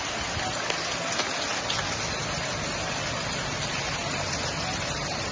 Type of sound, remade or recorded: recorded